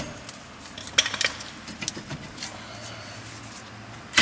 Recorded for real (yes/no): yes